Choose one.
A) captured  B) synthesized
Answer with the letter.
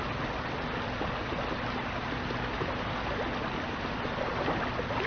A